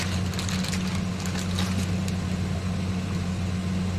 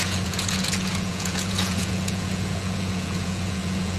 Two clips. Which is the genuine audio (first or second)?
first